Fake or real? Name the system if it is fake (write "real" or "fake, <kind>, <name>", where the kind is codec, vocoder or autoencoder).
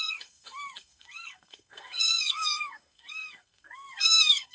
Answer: fake, codec, SNAC